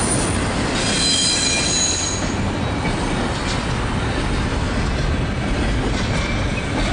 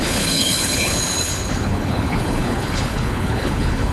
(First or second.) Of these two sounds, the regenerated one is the second